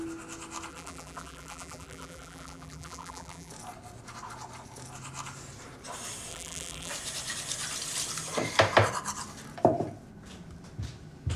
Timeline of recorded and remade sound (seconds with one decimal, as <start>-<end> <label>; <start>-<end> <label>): 0.0-0.7 recorded; 0.7-3.5 remade; 3.5-6.3 recorded; 6.3-6.9 remade; 6.9-11.4 recorded